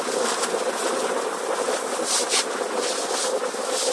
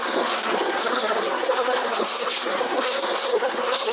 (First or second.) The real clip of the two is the first